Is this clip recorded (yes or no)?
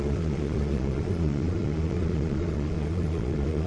no